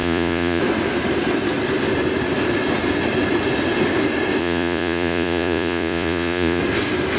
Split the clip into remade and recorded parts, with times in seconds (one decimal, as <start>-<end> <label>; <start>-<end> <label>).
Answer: 0.0-0.6 remade; 0.6-4.4 recorded; 4.4-6.6 remade; 6.6-7.2 recorded